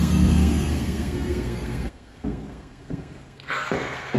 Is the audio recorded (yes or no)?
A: no